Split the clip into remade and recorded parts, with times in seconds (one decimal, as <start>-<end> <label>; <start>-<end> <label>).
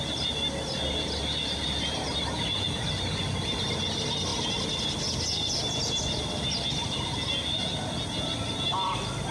0.0-9.3 recorded